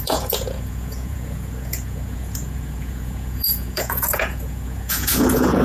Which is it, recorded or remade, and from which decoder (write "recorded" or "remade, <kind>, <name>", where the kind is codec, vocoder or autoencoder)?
remade, vocoder, Vocos